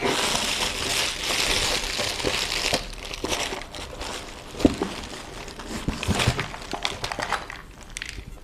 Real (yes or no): yes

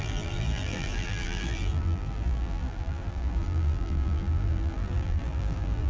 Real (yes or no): no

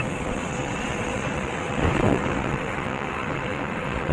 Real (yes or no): no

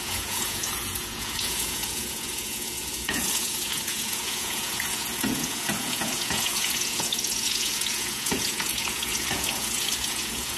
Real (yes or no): no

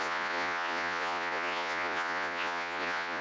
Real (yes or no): no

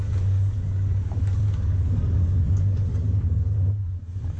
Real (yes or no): no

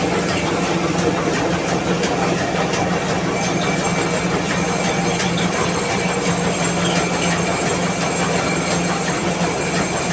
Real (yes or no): yes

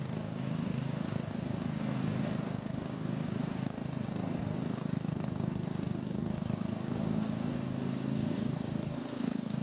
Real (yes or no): no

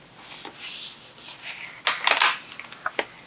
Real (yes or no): yes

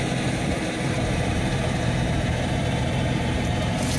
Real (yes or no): no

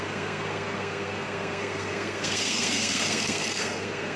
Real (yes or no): no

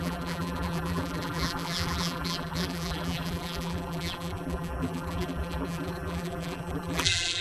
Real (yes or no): no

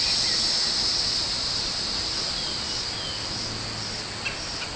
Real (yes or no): yes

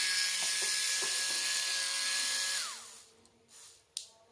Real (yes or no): yes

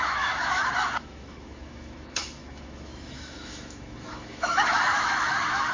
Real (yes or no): no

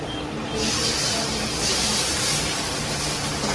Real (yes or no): no